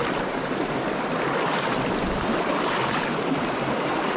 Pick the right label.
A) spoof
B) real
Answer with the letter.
B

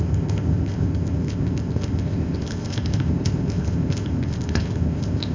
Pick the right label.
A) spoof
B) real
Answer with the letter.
A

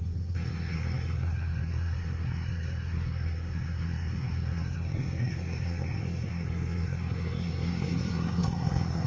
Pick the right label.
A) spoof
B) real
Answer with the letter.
A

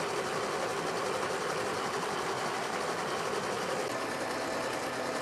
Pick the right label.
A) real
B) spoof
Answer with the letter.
A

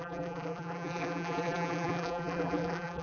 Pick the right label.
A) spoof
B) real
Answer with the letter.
A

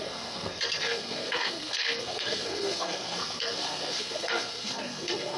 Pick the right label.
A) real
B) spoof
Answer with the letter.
B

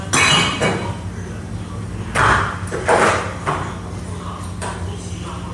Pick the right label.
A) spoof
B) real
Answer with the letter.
B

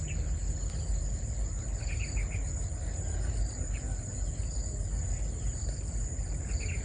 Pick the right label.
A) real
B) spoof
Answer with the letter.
A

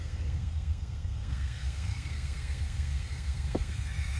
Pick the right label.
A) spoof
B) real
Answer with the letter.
A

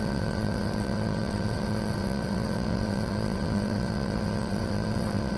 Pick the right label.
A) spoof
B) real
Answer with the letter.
A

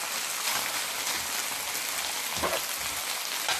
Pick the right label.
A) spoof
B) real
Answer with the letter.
B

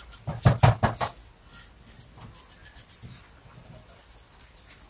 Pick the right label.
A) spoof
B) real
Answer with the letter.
B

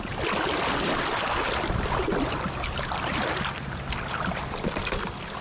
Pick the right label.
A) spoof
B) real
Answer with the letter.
B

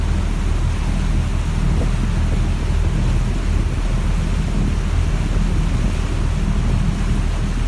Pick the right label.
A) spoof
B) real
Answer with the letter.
B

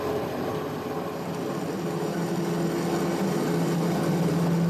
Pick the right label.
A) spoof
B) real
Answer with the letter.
B